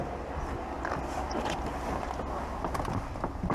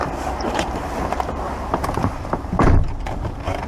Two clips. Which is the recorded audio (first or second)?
first